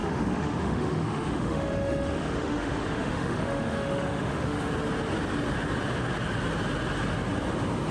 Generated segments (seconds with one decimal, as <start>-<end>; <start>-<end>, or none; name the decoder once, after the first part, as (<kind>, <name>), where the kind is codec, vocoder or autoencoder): 0.0-4.7 (autoencoder, DAC-VAE)